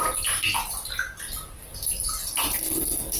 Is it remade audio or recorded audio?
recorded